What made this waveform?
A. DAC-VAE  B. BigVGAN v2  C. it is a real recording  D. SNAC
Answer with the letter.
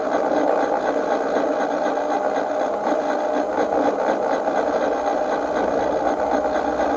C